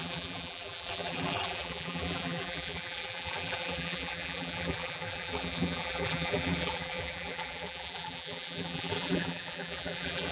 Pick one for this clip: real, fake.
fake